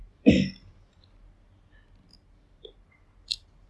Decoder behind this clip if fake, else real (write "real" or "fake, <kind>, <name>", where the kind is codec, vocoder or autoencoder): real